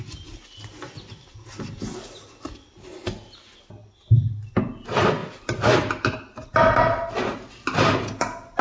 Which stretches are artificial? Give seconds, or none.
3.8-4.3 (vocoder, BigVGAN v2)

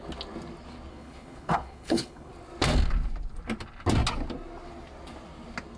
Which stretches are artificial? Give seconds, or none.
0.9-2.3 (codec, HILCodec)

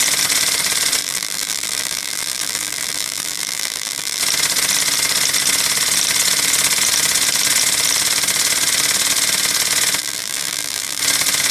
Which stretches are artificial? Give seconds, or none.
1.0-4.2 (vocoder, BigVGAN v2); 10.0-11.0

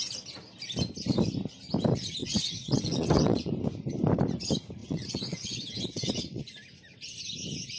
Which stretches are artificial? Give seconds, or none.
2.2-3.5 (vocoder, WaveNeXt); 4.8-6.5

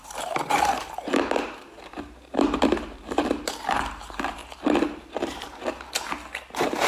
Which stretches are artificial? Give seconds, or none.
0.0-4.4 (vocoder, BigVGAN v2); 5.0-6.9

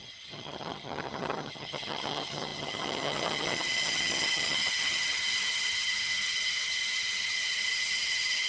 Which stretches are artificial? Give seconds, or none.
0.0-8.5 (vocoder, HiFi-GAN)

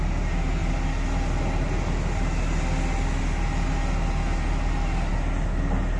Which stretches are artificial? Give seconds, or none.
none

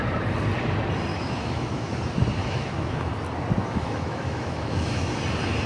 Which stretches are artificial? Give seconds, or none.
1.1-1.9 (autoencoder, DAC-VAE); 2.4-3.1; 3.6-5.1